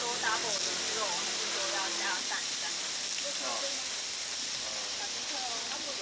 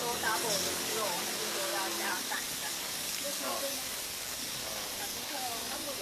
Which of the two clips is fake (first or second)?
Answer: second